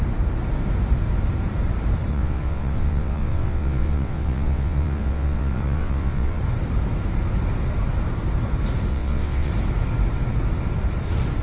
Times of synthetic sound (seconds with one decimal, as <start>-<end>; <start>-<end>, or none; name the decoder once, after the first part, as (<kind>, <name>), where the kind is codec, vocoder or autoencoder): 2.1-6.4 (vocoder, WaveNeXt); 8.9-9.5